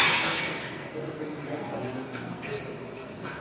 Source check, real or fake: fake